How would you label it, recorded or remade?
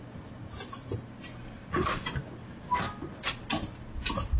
recorded